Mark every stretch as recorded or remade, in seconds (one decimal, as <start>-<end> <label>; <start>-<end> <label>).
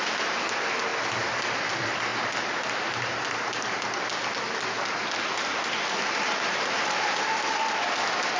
0.0-2.1 recorded; 2.1-3.3 remade; 3.3-5.0 recorded; 5.0-6.9 remade; 6.9-8.4 recorded